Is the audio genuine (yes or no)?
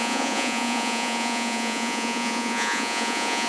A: no